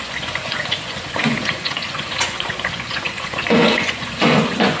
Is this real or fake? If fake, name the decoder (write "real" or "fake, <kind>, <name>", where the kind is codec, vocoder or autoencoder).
fake, vocoder, Vocos